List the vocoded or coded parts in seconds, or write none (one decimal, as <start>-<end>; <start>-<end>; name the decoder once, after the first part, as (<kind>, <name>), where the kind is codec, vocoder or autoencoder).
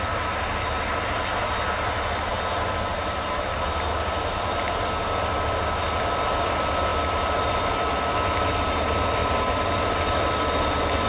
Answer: none